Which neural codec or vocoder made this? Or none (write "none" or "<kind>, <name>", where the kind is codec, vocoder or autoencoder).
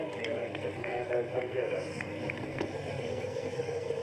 codec, SNAC